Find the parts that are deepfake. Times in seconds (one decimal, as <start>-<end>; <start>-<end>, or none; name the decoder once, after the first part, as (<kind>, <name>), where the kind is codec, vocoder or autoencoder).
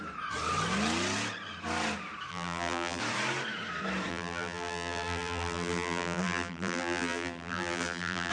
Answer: 2.3-3.0 (vocoder, BigVGAN v2); 4.1-8.3